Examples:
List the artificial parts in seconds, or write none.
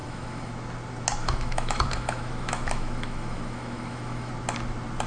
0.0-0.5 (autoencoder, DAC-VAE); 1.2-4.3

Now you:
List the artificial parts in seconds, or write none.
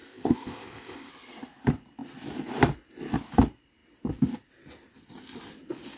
0.0-1.1 (codec, ZipCodec)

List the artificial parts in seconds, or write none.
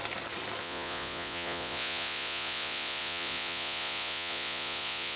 0.6-5.2 (vocoder, Vocos)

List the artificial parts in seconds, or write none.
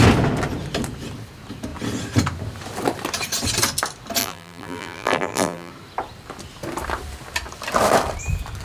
4.2-5.7 (vocoder, BigVGAN v2)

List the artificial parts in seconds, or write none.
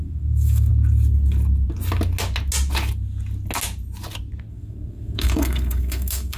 0.0-0.7 (codec, SNAC); 4.5-6.4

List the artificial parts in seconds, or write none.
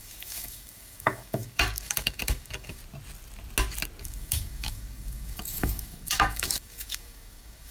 0.0-2.8 (codec, DAC); 4.0-7.7